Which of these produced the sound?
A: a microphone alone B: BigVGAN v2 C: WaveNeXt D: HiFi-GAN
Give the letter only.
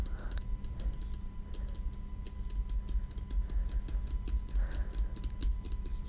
A